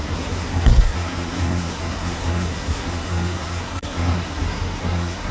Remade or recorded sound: remade